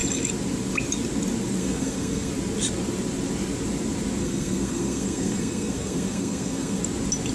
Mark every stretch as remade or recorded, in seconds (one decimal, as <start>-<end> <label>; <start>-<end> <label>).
0.0-1.6 recorded; 1.6-2.3 remade; 2.3-4.2 recorded; 4.2-6.8 remade; 6.8-7.3 recorded